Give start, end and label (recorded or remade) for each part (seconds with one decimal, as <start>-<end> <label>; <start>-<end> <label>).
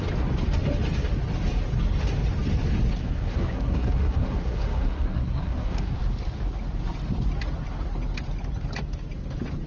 0.0-3.0 recorded; 3.0-6.0 remade; 6.0-9.7 recorded